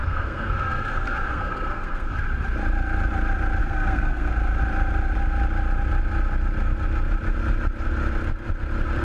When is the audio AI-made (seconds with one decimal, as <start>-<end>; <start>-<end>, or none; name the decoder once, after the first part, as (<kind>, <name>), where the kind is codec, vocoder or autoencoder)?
0.0-2.2 (codec, SNAC); 3.6-4.3